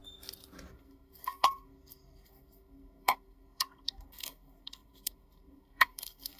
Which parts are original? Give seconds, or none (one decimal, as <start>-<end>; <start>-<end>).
0.0-0.7